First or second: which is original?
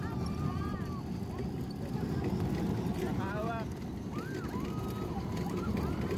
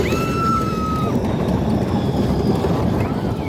first